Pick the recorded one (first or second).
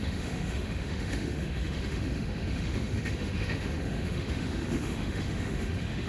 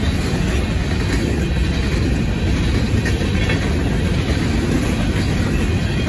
second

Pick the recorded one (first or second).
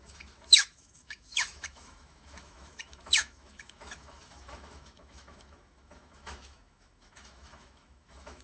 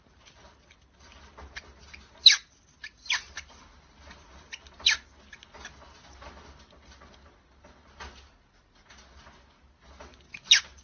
second